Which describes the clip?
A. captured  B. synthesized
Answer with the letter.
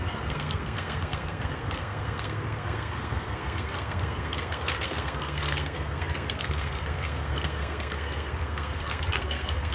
B